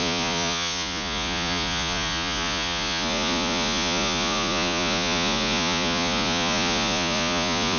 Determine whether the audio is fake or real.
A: fake